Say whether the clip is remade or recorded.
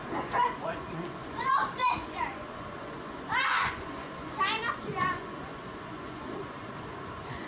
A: remade